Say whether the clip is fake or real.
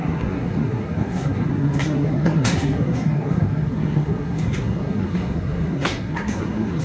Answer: fake